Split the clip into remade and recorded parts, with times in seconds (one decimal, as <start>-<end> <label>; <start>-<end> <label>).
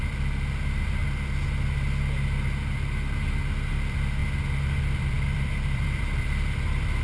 0.0-1.0 remade; 1.0-3.7 recorded; 3.7-4.2 remade; 4.2-4.8 recorded; 4.8-7.0 remade